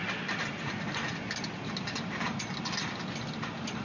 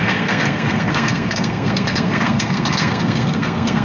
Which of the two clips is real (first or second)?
first